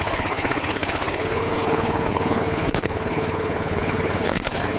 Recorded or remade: remade